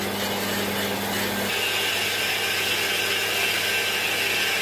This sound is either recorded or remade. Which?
recorded